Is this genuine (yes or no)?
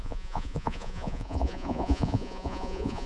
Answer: no